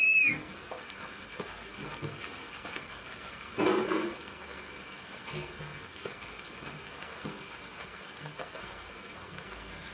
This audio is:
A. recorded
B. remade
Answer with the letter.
B